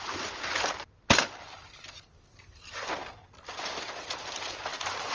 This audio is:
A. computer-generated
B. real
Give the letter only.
B